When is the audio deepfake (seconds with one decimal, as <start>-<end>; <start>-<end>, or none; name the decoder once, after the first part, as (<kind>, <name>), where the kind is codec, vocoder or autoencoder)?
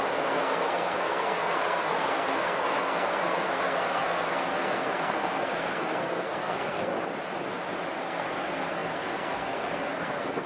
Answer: 0.0-6.9 (codec, SNAC); 8.0-10.5